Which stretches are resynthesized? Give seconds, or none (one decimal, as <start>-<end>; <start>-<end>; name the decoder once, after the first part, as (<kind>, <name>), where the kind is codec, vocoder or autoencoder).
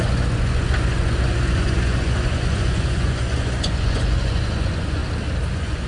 0.0-5.0 (vocoder, Vocos); 5.5-5.9